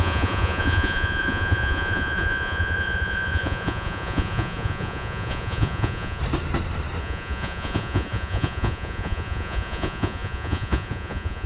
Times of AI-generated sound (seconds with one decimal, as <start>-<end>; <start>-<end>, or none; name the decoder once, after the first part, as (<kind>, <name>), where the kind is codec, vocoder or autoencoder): 0.0-6.2 (vocoder, Vocos); 7.0-11.5